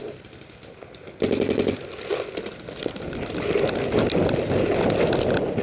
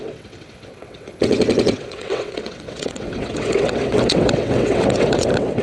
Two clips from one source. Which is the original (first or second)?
first